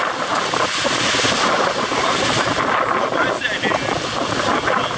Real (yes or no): yes